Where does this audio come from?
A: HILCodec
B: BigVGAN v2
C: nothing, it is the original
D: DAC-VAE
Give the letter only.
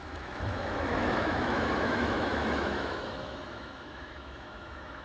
D